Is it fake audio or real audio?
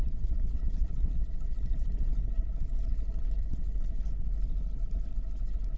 fake